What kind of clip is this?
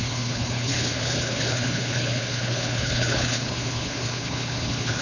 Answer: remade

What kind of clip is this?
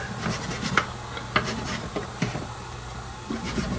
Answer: recorded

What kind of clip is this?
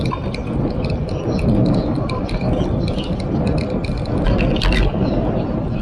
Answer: recorded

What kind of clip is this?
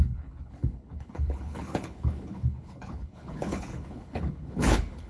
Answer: remade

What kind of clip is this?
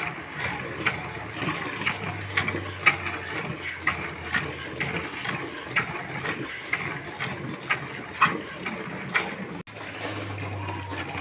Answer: recorded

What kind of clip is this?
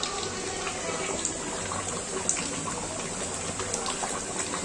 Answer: recorded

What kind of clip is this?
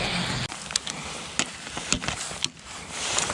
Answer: recorded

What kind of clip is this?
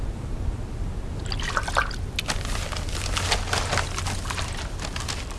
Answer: recorded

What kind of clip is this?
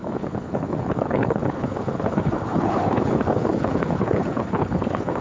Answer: remade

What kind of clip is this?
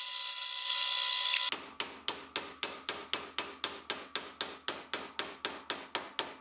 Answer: recorded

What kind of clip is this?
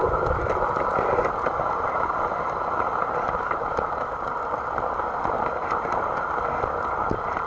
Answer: recorded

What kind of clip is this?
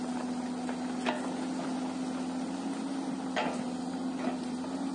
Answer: recorded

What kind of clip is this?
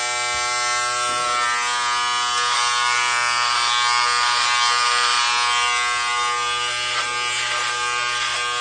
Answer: recorded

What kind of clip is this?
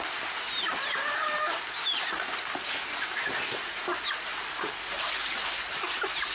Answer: recorded